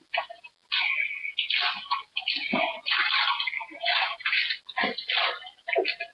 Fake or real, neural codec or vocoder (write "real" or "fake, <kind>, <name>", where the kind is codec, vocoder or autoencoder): real